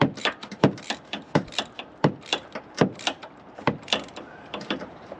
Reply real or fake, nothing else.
fake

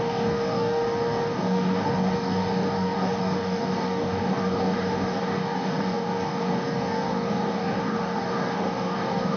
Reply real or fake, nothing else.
fake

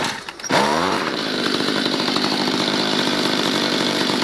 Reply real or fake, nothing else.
fake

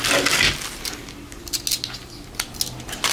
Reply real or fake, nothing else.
real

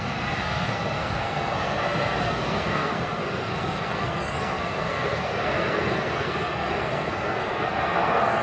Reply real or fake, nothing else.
fake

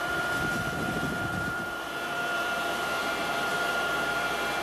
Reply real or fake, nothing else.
real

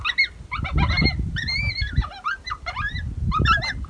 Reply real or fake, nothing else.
real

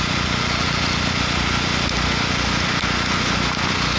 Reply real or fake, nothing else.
real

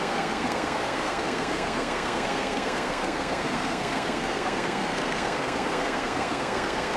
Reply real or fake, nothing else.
fake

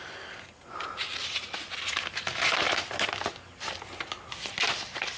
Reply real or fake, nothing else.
real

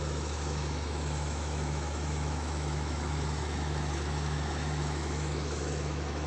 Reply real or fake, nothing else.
fake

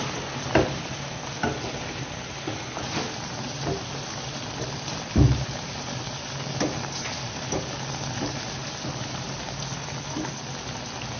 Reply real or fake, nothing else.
real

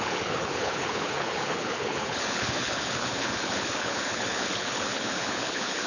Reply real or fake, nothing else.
fake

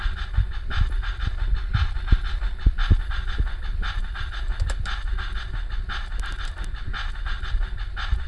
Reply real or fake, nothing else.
real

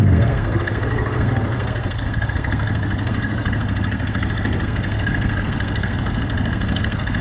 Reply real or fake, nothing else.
fake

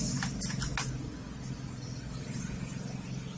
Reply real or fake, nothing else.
real